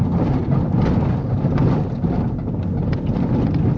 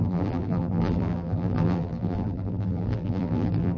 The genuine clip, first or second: first